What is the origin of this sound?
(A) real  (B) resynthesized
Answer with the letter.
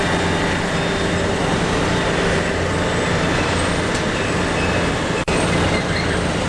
A